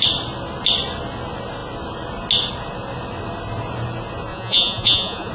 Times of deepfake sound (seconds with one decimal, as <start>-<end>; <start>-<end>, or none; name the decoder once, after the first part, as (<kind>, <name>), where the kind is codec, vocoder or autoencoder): 4.3-5.3 (vocoder, Vocos)